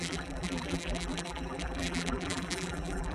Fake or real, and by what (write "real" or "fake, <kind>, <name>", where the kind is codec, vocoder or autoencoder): fake, vocoder, BigVGAN v2